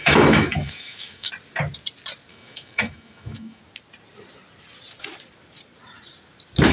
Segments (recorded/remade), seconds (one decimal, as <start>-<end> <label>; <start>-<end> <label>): 0.0-1.3 remade; 1.3-2.3 recorded; 2.3-3.6 remade; 3.6-6.7 recorded